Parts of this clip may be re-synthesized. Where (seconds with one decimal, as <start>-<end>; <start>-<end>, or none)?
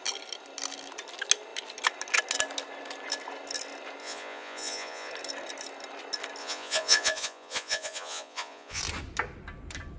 4.0-5.1; 6.4-8.8